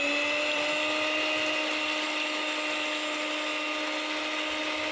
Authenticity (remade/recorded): recorded